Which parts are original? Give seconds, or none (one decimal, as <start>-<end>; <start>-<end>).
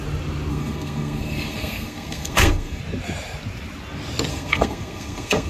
0.0-0.5; 2.8-4.3